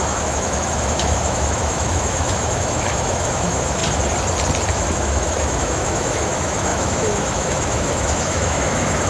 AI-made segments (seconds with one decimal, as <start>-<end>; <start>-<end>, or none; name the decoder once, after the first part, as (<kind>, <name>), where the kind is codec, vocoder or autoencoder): 0.0-3.8 (autoencoder, DAC-VAE); 4.7-9.1